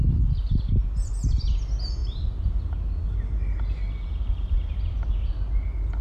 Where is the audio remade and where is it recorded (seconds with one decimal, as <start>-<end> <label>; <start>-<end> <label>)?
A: 0.0-6.0 recorded